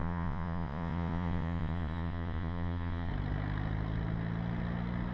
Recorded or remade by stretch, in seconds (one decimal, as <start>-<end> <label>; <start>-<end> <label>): 0.0-3.1 remade; 3.1-5.1 recorded